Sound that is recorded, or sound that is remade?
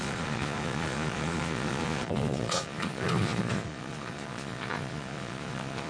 remade